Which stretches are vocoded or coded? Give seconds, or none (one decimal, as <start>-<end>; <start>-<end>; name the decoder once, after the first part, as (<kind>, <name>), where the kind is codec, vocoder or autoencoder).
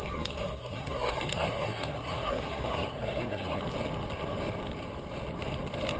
0.0-3.6 (codec, SNAC)